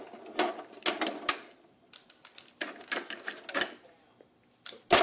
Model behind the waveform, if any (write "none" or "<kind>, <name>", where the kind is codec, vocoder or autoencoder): none